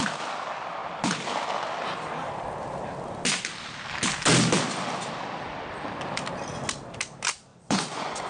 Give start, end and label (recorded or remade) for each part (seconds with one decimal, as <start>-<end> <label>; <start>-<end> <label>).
0.0-7.5 recorded; 7.5-8.3 remade